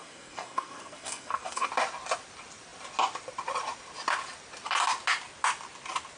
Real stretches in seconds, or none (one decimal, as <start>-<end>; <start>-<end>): 1.7-6.2